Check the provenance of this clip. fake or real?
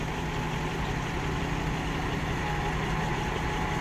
real